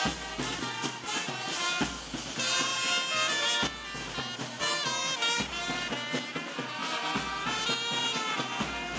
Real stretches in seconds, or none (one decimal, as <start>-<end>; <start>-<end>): 0.0-9.0